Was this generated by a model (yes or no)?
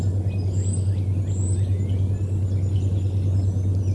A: no